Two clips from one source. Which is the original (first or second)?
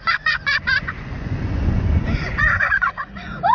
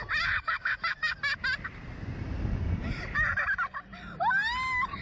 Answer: second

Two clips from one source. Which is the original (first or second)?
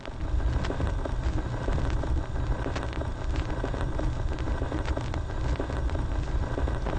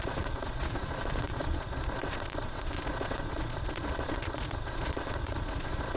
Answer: first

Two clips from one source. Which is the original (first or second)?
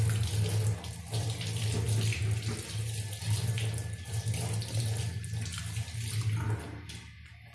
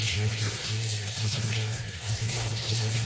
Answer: first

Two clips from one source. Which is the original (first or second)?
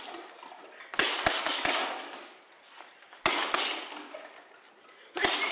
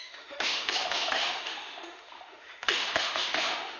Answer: first